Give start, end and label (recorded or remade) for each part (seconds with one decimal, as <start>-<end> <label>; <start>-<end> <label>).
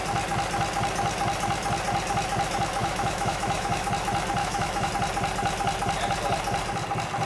0.0-2.8 recorded; 2.8-3.9 remade; 3.9-4.4 recorded; 4.4-4.9 remade; 4.9-7.3 recorded